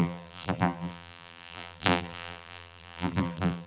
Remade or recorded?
remade